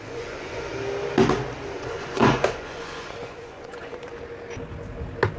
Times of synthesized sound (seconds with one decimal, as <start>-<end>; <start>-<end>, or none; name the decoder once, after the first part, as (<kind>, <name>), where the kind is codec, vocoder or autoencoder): 0.0-0.7 (vocoder, Vocos); 1.7-4.1